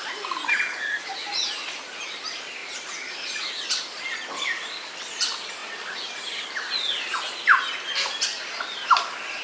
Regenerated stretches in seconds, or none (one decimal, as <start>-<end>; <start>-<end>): 1.2-2.0; 2.6-3.5